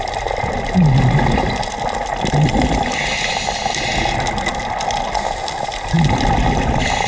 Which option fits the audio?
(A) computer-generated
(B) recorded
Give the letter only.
B